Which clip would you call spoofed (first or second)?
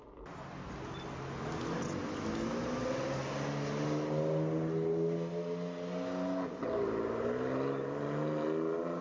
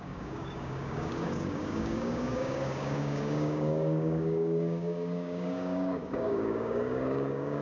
second